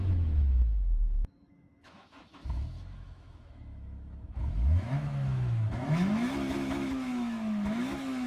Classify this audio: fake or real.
fake